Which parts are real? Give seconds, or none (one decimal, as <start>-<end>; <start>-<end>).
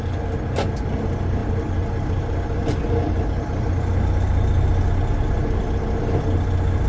0.0-6.9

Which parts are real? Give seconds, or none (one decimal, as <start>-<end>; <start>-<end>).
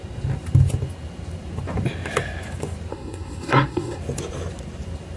0.0-2.9; 4.0-5.2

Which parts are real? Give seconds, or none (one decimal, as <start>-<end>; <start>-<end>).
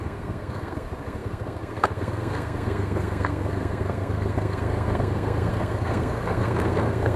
none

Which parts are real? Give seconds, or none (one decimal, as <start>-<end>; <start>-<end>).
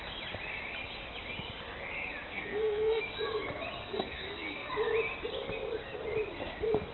0.0-2.3; 3.0-3.8; 4.7-6.9